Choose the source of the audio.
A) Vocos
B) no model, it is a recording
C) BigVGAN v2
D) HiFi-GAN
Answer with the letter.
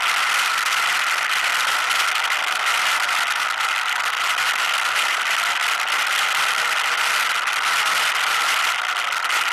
B